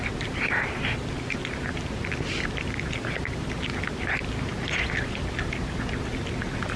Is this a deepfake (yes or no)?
no